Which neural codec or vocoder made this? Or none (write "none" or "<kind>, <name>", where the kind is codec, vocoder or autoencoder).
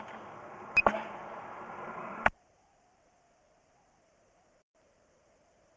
none